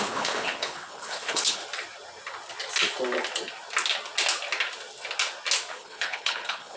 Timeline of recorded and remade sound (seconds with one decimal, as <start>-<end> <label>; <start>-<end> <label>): 0.0-1.6 remade; 1.6-5.7 recorded; 5.7-6.8 remade